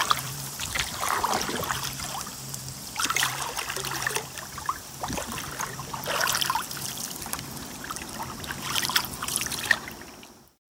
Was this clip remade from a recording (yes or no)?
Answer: yes